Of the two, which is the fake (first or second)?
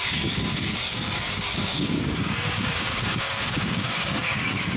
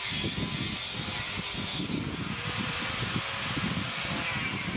first